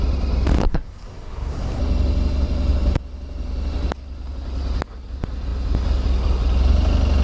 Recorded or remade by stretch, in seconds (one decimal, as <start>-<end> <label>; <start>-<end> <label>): 0.0-0.6 recorded; 0.6-1.8 remade; 1.8-7.2 recorded